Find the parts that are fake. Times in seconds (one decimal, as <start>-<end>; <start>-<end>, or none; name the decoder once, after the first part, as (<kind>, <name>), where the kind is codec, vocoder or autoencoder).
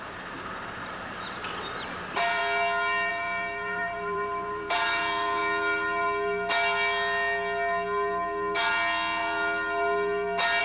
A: 0.0-1.4 (vocoder, BigVGAN v2); 1.9-2.4; 3.1-5.4